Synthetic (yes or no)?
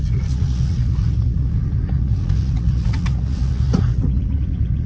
yes